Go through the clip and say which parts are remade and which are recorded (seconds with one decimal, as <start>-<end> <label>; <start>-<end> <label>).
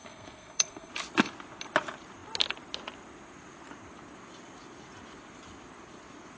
0.0-0.9 remade; 0.9-6.4 recorded